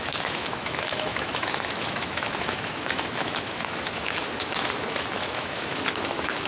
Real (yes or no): no